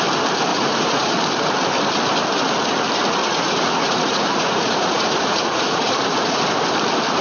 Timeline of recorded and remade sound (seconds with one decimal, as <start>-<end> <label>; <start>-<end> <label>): 0.0-0.5 recorded; 0.5-1.1 remade; 1.1-3.2 recorded; 3.2-6.4 remade; 6.4-7.2 recorded